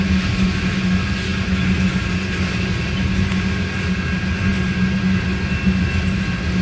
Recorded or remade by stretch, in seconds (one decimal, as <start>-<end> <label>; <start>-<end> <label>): 0.0-6.6 recorded